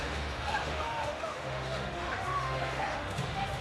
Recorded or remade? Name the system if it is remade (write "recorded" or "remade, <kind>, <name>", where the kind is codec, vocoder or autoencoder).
remade, autoencoder, DAC-VAE